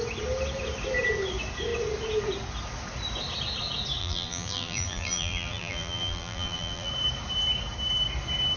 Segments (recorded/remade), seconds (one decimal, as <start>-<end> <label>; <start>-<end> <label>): 0.0-4.0 recorded; 4.0-6.9 remade; 6.9-8.6 recorded